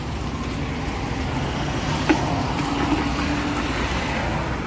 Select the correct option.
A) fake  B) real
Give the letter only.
B